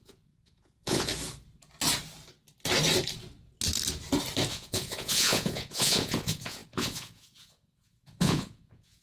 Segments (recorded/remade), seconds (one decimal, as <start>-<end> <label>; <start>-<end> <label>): 0.0-1.1 remade; 1.1-4.5 recorded; 4.5-9.0 remade